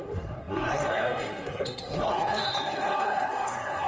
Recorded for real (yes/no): no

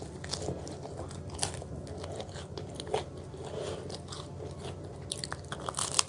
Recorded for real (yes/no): yes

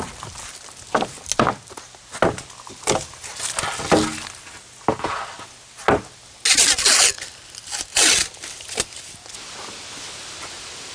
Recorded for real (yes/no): yes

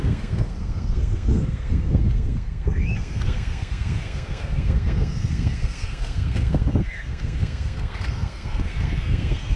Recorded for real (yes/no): no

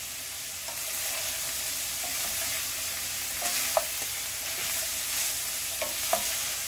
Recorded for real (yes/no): yes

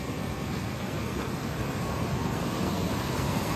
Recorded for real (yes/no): no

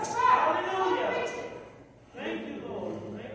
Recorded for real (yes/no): yes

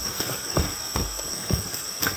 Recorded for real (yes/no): no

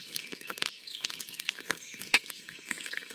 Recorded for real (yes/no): no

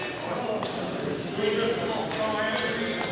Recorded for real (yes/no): yes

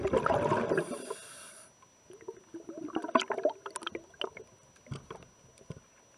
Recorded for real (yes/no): yes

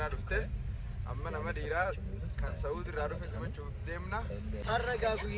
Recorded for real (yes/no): yes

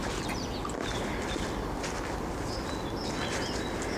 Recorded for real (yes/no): yes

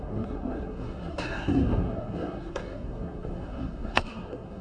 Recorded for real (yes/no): no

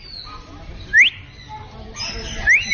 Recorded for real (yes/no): yes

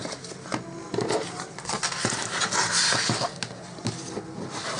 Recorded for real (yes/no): yes